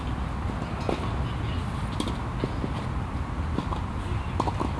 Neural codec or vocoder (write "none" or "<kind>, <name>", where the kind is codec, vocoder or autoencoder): none